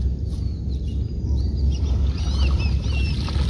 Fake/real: real